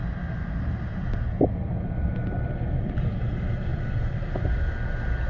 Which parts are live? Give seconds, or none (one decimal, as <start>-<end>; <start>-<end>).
0.0-5.3